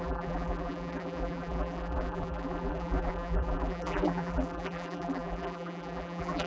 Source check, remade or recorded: remade